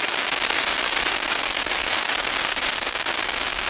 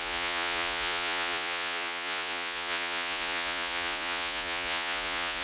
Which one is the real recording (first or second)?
first